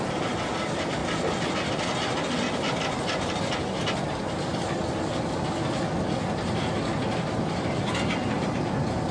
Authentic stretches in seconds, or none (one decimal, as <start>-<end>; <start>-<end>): 0.0-9.1